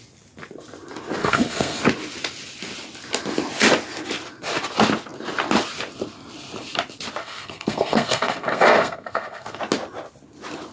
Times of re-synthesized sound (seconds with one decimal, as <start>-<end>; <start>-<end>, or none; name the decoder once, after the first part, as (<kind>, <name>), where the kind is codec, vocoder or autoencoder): 1.2-1.8 (codec, SNAC); 7.2-9.6